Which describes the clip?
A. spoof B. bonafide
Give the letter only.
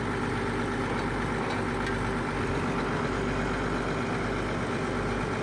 B